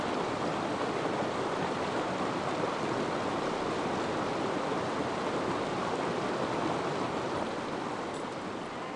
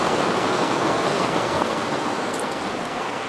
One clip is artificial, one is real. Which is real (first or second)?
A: first